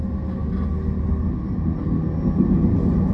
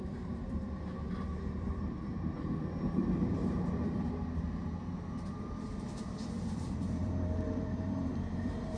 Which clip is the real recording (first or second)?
first